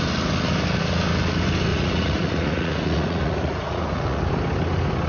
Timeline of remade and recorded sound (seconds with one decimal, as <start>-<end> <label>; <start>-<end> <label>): 0.0-1.7 recorded; 1.7-4.2 remade; 4.2-5.1 recorded